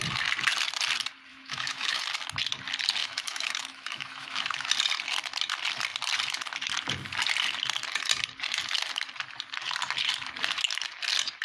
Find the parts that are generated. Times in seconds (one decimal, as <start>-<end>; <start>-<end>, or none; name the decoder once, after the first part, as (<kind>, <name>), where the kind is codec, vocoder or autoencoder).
1.3-2.0 (autoencoder, DAC-VAE); 3.0-4.7